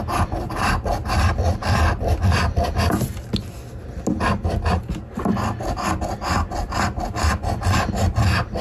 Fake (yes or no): no